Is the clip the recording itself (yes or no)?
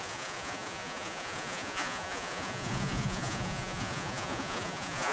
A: no